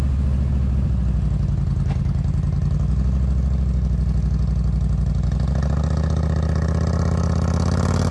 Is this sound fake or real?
real